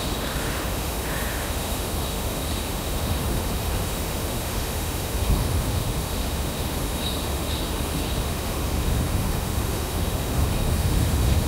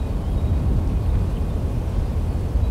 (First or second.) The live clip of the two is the second